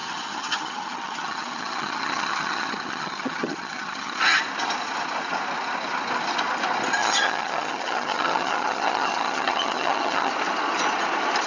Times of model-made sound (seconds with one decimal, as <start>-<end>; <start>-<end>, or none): 0.0-4.4; 7.0-10.3

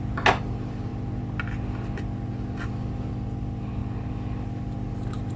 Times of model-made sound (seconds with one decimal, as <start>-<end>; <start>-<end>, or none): none

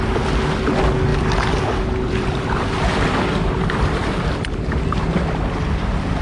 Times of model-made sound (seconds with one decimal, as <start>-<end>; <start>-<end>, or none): 1.1-4.1

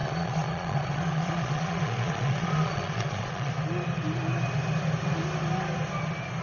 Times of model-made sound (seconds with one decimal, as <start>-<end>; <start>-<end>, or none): 0.0-3.5

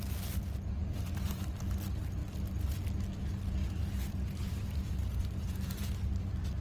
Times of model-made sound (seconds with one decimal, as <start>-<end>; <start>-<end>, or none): 0.8-1.6; 3.6-5.9

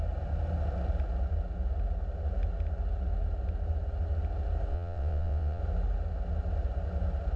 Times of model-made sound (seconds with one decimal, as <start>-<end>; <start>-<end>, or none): 4.7-5.6

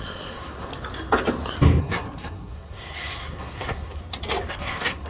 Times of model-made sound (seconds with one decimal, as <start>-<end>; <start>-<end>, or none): 0.0-0.7; 1.8-4.0; 4.5-5.1